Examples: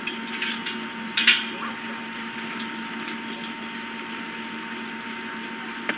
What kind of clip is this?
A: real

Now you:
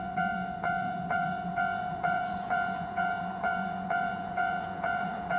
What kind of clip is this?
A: fake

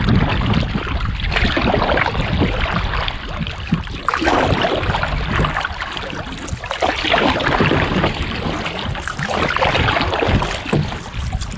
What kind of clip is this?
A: real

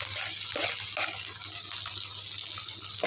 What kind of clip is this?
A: real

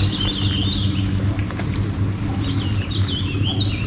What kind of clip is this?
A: real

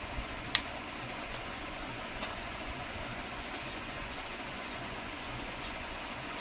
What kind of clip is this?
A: fake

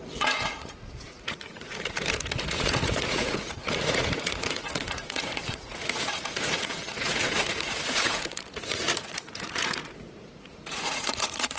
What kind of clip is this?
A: fake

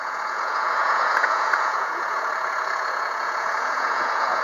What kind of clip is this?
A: fake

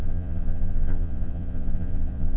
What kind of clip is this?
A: fake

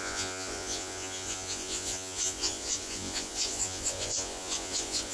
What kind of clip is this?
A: fake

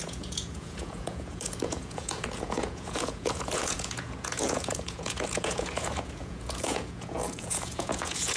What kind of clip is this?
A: fake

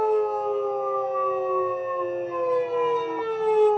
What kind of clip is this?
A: real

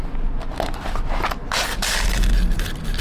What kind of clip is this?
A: real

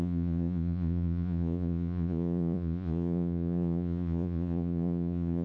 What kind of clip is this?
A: fake